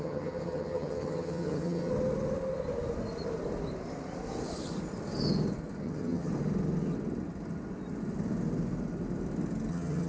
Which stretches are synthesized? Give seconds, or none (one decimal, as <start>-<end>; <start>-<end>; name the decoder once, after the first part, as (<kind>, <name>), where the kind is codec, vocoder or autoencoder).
0.0-1.9 (vocoder, HiFi-GAN); 5.8-6.3; 9.7-10.1